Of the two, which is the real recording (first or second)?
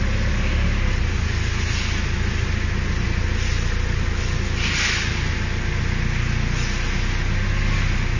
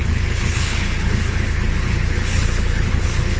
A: first